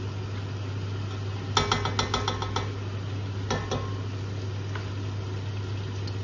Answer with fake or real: real